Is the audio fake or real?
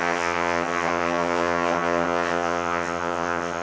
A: fake